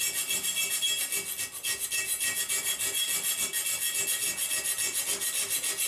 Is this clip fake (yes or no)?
no